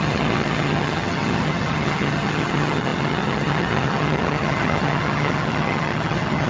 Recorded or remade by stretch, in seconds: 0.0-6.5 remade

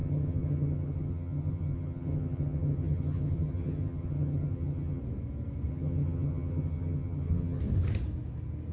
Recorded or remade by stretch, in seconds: 0.0-5.0 remade; 5.0-5.7 recorded; 5.7-7.6 remade; 7.6-8.7 recorded

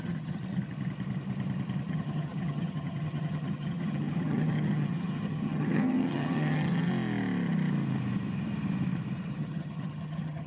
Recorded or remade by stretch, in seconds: 0.0-0.4 remade; 0.4-1.9 recorded; 1.9-6.9 remade; 6.9-9.3 recorded; 9.3-10.5 remade